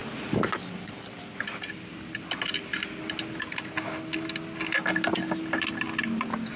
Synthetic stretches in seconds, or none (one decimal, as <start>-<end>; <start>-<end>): none